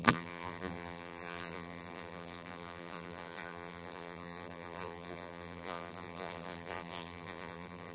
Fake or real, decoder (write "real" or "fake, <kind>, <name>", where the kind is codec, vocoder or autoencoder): fake, vocoder, BigVGAN v2